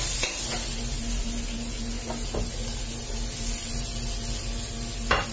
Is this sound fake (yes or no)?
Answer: no